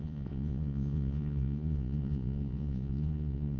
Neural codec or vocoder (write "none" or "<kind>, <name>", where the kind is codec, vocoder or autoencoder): vocoder, Vocos